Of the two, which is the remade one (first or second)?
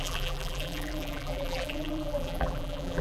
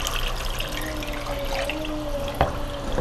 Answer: first